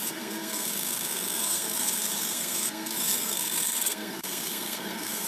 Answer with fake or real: fake